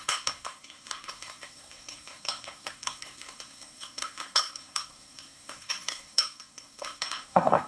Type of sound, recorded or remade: remade